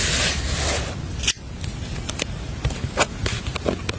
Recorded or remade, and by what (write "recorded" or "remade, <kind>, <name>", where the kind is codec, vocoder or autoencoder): recorded